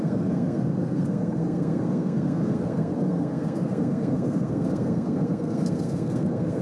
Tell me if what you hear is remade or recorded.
remade